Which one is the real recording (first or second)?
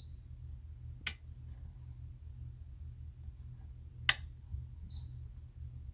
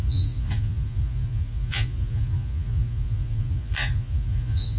first